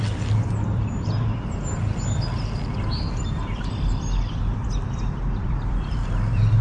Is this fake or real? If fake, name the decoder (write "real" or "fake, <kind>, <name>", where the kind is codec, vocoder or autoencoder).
fake, vocoder, BigVGAN v2